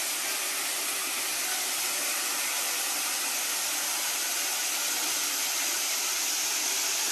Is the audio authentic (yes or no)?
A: yes